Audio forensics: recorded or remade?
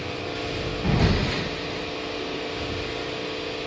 recorded